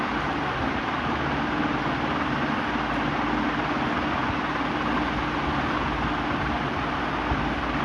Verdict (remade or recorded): recorded